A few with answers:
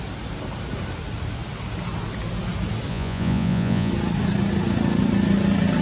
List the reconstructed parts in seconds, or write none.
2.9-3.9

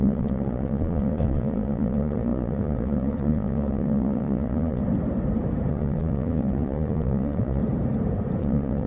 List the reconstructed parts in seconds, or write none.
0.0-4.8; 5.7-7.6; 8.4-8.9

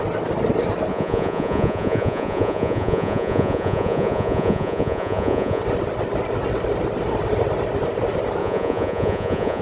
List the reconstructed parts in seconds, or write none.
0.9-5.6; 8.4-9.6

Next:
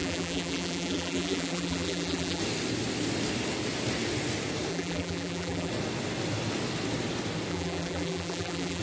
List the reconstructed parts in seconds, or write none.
0.0-2.4; 4.7-5.7; 7.5-8.8

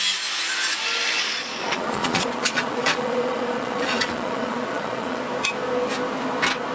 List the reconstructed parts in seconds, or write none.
1.2-5.2

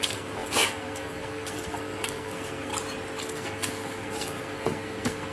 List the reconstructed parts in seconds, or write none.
0.0-2.7; 3.2-5.3